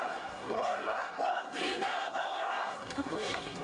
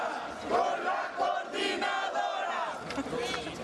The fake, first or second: first